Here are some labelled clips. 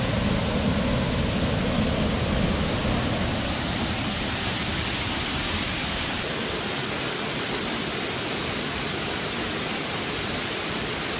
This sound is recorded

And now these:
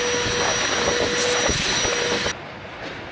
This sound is recorded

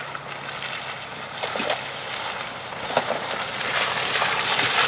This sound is recorded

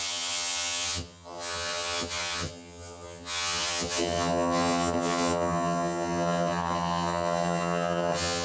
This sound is remade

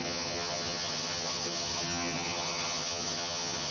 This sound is remade